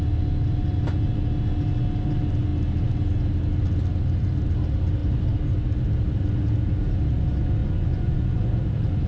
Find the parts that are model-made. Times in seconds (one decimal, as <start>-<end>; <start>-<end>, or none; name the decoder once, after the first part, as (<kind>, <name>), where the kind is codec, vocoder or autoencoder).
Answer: 7.6-8.6 (vocoder, Vocos)